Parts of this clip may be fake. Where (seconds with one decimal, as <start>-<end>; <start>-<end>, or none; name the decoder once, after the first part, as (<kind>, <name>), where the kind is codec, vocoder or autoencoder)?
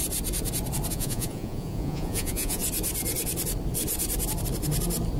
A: 0.9-2.6 (vocoder, Vocos)